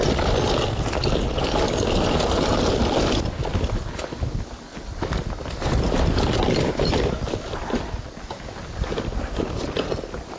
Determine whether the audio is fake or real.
real